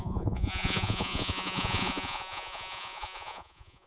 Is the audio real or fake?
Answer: fake